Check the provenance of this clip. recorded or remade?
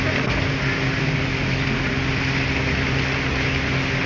recorded